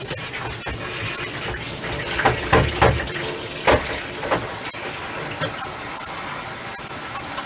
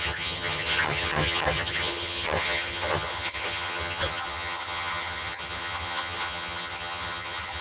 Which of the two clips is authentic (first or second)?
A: first